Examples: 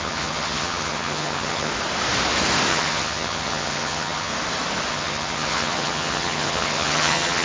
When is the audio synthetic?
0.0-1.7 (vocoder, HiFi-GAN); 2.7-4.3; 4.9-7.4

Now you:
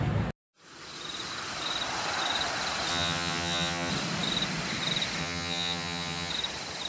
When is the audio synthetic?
2.9-3.9 (vocoder, HiFi-GAN); 5.2-6.3

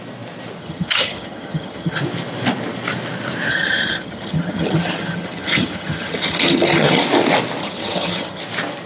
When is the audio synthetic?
0.6-2.0 (vocoder, HiFi-GAN); 3.5-7.0; 7.6-8.4

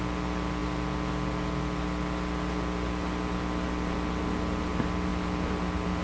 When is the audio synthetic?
none

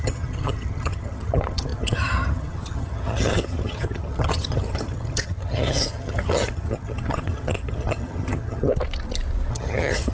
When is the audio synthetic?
0.0-8.7 (vocoder, HiFi-GAN); 9.5-10.1